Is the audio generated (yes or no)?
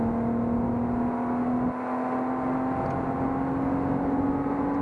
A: no